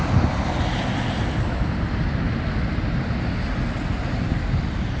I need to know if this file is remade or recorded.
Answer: recorded